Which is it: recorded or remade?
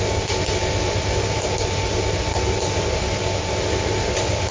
recorded